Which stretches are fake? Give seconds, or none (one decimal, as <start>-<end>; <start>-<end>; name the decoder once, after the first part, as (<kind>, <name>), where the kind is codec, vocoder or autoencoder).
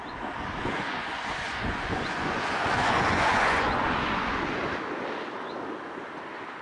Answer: 0.6-4.6 (vocoder, Vocos)